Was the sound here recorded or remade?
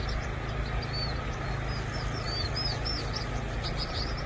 recorded